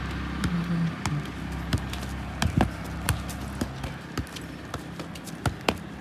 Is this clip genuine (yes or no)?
yes